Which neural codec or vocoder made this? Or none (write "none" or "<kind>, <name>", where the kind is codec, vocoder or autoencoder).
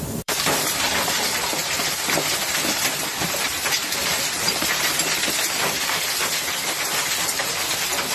vocoder, BigVGAN v2